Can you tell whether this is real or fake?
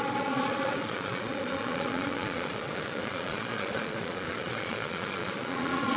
fake